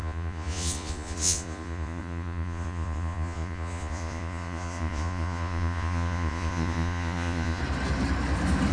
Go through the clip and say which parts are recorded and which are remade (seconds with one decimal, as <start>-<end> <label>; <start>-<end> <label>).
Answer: 0.0-7.6 remade; 7.6-8.7 recorded